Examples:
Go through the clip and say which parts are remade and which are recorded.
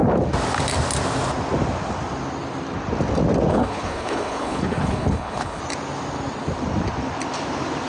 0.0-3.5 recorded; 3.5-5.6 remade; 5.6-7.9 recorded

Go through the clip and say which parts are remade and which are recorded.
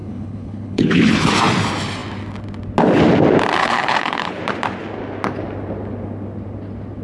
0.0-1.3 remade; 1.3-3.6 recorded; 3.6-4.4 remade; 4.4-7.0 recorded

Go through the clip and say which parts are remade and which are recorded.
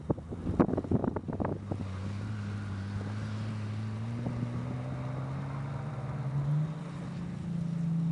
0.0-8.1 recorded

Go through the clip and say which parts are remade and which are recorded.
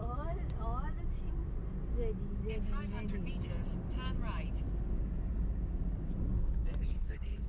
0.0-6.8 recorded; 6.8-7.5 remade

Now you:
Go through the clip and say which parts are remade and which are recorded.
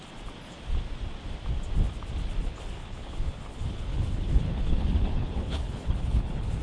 0.0-2.4 recorded; 2.4-6.6 remade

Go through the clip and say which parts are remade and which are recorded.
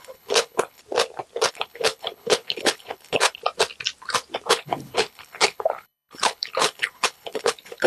0.0-0.8 remade; 0.8-1.5 recorded; 1.5-3.4 remade; 3.4-4.5 recorded; 4.5-7.9 remade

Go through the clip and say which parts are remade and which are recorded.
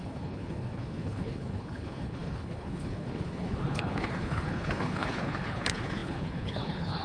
0.0-7.0 remade